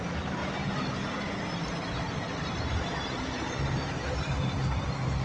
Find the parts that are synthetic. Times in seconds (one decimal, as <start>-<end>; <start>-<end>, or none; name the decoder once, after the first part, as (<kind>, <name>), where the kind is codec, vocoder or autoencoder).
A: 0.0-0.4 (vocoder, BigVGAN v2); 2.7-5.2